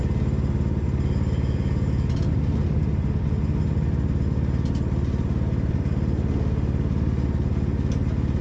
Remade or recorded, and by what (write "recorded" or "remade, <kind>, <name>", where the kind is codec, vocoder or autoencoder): recorded